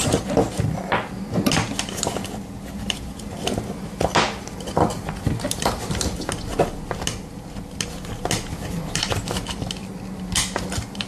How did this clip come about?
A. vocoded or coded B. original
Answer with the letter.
B